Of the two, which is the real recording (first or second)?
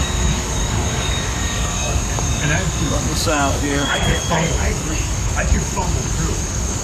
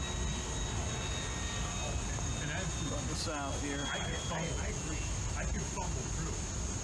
second